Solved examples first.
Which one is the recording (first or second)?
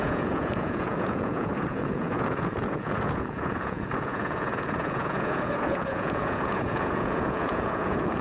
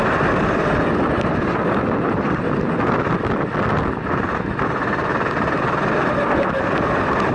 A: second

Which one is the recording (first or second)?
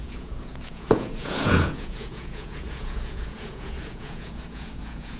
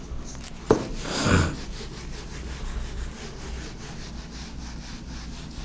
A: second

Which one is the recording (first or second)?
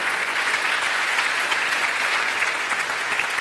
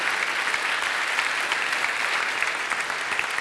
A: second